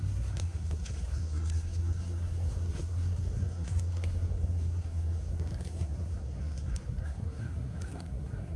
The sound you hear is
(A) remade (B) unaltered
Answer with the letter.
A